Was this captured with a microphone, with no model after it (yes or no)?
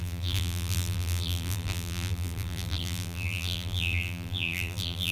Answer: no